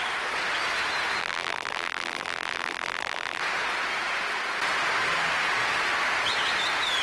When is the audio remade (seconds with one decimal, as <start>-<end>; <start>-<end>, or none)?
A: 1.2-3.4